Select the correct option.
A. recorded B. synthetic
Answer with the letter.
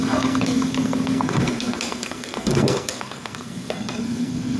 B